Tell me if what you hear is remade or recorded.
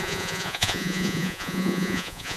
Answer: remade